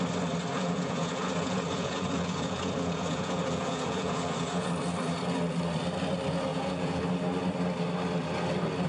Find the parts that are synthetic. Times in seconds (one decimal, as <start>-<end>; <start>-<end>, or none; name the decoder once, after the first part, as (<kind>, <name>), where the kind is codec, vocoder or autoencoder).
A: 0.5-4.7 (vocoder, Vocos); 6.5-7.0